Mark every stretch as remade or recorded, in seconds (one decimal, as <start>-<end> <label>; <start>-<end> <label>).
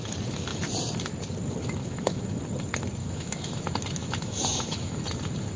0.0-1.8 recorded; 1.8-2.4 remade; 2.4-3.0 recorded; 3.0-3.6 remade; 3.6-4.0 recorded; 4.0-5.0 remade; 5.0-5.6 recorded